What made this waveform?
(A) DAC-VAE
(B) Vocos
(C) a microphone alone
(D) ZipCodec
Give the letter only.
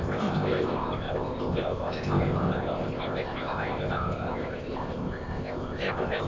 D